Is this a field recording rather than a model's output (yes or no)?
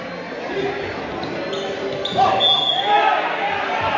yes